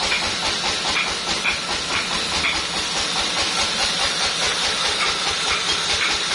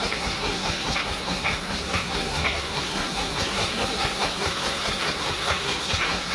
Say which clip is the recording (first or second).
first